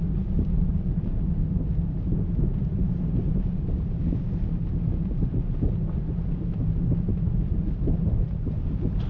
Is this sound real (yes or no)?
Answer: yes